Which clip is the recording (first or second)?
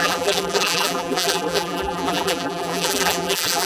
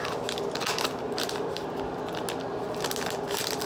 second